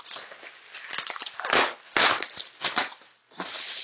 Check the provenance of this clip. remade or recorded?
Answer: recorded